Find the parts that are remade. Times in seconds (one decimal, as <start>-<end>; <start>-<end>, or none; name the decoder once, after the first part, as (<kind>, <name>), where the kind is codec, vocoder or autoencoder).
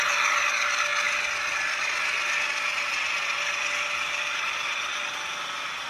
none